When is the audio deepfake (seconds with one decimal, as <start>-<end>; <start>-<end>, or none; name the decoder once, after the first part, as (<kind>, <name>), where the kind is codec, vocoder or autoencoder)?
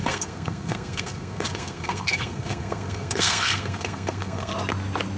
0.0-4.5 (codec, SNAC)